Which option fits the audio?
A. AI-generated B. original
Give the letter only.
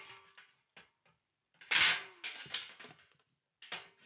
B